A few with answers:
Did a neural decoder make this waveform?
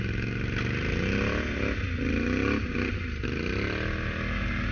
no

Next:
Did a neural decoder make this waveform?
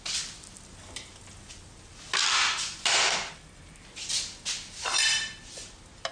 no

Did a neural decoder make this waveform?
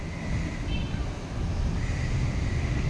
no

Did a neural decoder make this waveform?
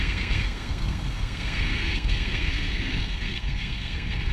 yes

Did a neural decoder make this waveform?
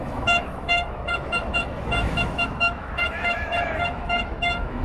yes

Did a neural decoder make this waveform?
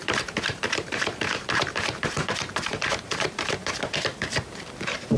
yes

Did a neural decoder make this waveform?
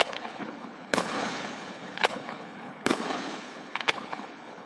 yes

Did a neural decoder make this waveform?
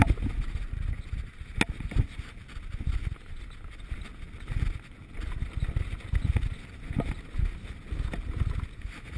no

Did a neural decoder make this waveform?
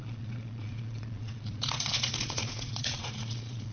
yes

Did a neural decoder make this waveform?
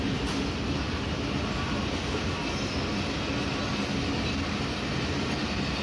no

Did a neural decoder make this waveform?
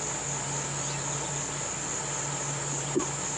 no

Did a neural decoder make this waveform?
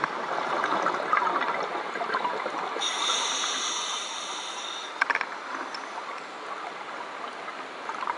no